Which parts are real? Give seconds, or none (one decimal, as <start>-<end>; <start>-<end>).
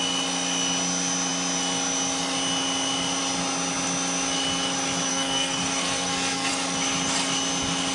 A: 0.0-5.1; 6.5-7.9